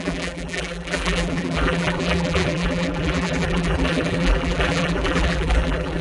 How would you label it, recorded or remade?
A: remade